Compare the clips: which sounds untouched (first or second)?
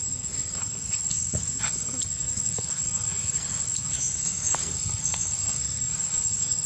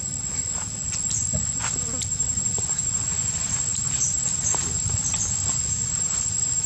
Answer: second